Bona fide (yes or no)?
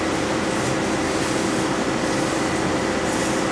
yes